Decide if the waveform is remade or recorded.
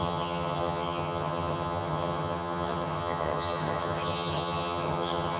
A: remade